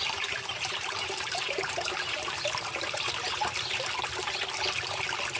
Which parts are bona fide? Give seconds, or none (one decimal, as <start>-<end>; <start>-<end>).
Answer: 3.4-5.4